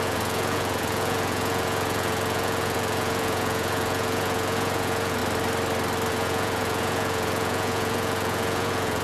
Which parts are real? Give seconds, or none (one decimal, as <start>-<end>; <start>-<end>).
5.2-6.1